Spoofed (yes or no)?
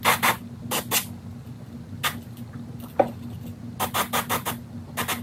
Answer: no